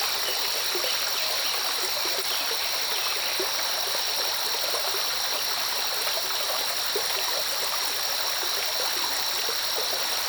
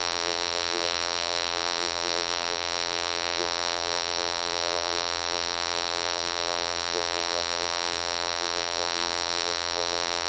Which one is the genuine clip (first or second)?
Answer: first